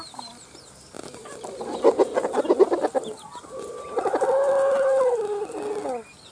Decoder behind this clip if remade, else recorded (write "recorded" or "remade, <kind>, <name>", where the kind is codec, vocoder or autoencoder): recorded